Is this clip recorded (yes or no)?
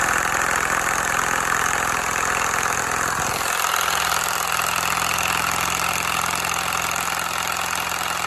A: yes